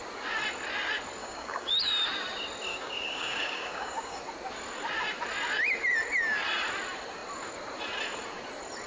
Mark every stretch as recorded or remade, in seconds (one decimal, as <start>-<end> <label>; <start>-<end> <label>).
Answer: 0.0-1.2 recorded; 1.2-1.9 remade; 1.9-2.7 recorded; 2.7-4.2 remade; 4.2-8.9 recorded